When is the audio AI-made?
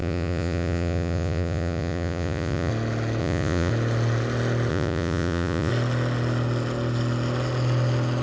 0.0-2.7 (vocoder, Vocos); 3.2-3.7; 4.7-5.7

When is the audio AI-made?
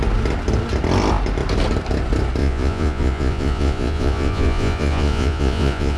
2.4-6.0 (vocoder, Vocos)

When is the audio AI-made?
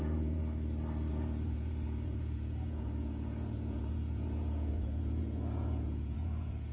0.0-0.4 (vocoder, Vocos); 1.1-6.7